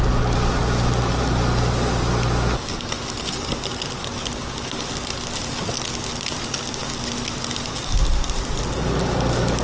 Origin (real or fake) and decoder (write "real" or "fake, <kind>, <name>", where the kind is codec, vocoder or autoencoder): real